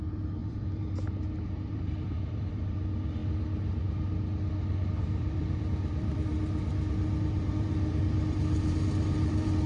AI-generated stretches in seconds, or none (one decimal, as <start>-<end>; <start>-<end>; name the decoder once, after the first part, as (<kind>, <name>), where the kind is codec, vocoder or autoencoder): 0.0-3.2 (vocoder, BigVGAN v2); 5.0-6.3; 7.5-9.7